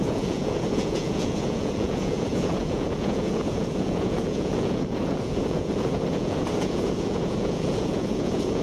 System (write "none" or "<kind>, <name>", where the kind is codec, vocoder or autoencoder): vocoder, Vocos